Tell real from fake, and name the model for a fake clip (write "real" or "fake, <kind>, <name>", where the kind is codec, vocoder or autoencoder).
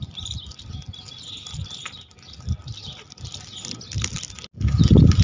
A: real